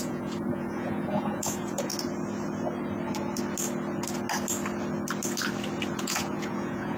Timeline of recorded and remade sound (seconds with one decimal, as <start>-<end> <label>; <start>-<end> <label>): 0.0-1.9 remade; 1.9-5.9 recorded; 5.9-7.0 remade